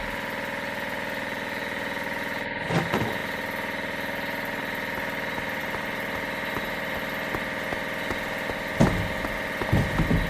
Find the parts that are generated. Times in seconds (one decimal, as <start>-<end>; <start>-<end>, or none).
none